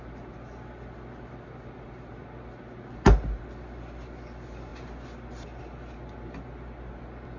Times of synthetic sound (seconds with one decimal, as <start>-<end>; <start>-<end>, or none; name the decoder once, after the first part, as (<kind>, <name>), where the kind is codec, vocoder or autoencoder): none